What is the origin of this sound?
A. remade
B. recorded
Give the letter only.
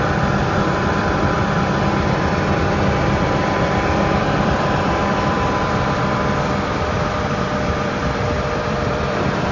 A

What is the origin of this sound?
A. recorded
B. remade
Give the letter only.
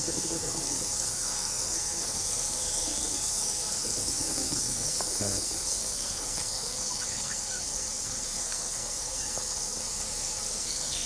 B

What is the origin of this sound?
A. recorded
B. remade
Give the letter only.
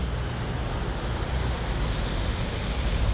A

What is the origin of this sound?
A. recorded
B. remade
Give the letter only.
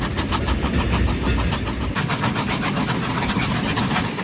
A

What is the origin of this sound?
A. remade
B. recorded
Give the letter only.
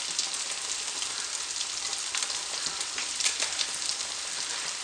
A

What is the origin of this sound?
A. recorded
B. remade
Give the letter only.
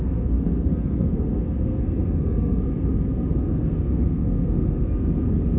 B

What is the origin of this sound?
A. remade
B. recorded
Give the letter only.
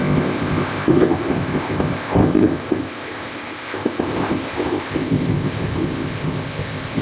A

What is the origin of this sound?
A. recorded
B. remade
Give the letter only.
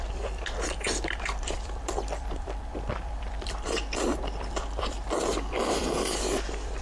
B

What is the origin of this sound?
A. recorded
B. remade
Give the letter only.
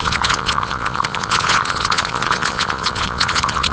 B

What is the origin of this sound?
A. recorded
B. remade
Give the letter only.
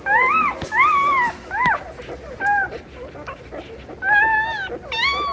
A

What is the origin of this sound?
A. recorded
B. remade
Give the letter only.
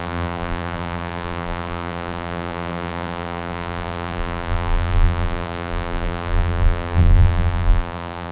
B